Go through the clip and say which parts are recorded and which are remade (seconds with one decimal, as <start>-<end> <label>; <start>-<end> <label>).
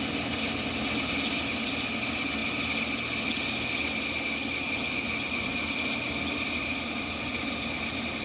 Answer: 0.0-8.2 recorded